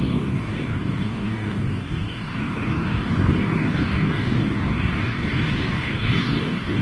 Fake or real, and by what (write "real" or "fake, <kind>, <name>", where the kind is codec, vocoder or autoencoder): fake, codec, DAC